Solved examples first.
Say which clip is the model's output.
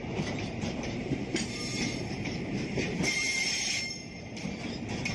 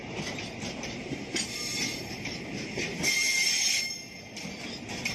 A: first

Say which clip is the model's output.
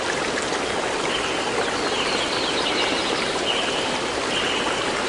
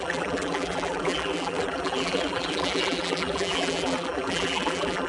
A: second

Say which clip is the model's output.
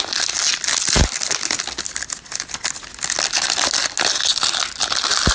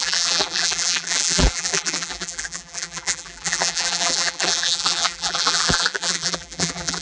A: second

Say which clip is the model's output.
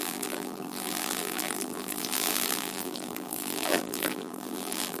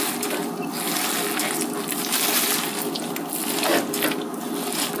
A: first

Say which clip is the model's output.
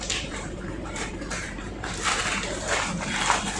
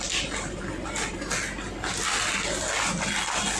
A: first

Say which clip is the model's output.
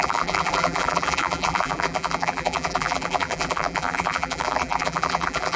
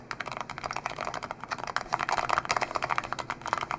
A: first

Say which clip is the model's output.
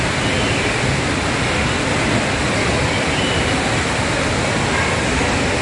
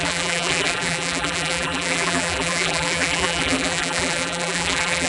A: second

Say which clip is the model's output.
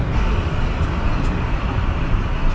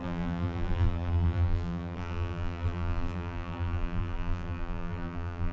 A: second